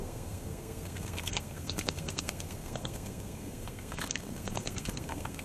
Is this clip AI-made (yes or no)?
yes